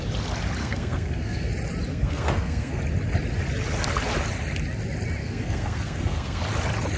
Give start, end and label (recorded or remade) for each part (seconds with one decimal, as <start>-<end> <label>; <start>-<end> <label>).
0.0-0.6 recorded; 0.6-1.5 remade; 1.5-1.9 recorded; 1.9-2.8 remade; 2.8-5.2 recorded; 5.2-6.4 remade; 6.4-7.0 recorded